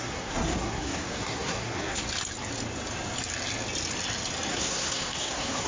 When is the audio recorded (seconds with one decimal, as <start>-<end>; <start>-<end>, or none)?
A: 2.0-4.5